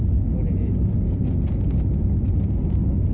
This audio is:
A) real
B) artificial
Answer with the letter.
A